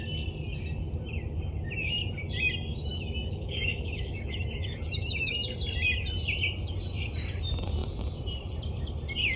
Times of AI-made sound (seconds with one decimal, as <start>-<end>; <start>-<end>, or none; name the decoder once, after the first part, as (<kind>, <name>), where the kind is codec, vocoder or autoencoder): 2.9-5.3 (autoencoder, DAC-VAE)